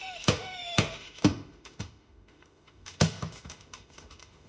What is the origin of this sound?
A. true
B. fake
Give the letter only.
B